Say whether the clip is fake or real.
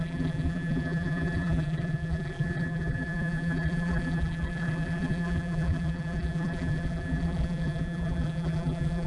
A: fake